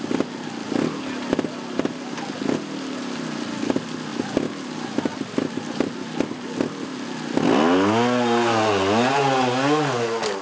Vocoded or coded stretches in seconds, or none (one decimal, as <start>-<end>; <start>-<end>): none